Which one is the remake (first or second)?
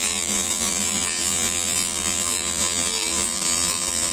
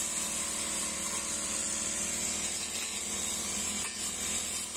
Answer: first